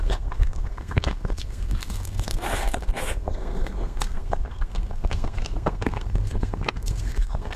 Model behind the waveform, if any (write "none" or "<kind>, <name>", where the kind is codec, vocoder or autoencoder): codec, SNAC